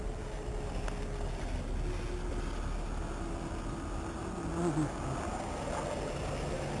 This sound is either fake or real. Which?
real